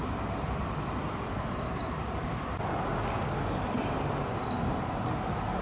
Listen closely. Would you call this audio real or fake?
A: real